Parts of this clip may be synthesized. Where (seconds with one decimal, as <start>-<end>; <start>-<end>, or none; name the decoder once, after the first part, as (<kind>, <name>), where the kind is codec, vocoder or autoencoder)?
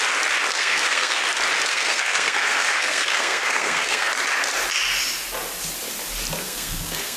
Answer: 0.5-1.2 (codec, SNAC); 1.7-4.1; 6.4-7.2